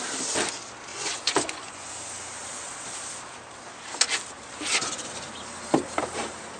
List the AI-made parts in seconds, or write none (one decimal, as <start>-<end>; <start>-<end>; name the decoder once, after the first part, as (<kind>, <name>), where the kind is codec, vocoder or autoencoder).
0.9-1.9 (vocoder, Vocos)